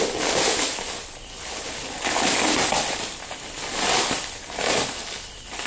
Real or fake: real